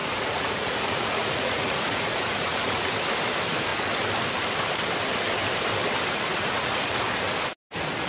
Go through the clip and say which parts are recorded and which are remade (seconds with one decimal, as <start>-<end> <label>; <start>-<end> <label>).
0.0-2.9 remade; 2.9-6.3 recorded; 6.3-7.0 remade; 7.0-8.1 recorded